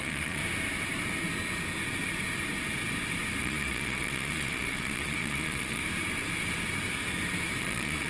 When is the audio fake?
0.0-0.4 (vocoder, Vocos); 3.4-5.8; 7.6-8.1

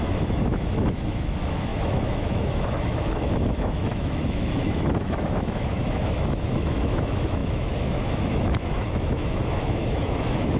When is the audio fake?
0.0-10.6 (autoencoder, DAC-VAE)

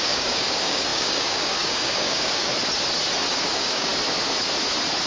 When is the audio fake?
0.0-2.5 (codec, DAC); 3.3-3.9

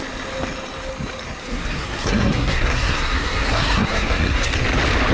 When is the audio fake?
1.4-4.5 (codec, SNAC)

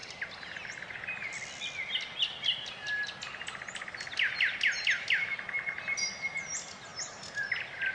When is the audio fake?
none

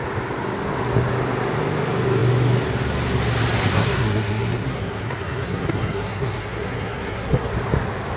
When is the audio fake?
3.7-7.5 (codec, SNAC)

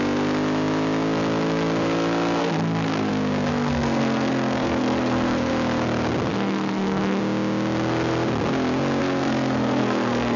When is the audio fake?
2.4-3.1 (codec, SNAC); 3.5-5.5; 6.3-7.2; 9.0-10.4